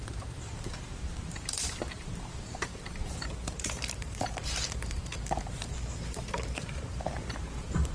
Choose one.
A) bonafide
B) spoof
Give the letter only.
B